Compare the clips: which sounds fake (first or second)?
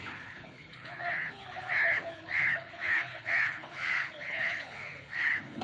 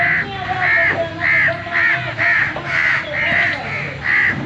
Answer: first